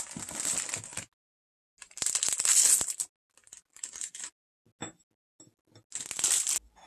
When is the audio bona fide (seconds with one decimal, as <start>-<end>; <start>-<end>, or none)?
0.0-6.9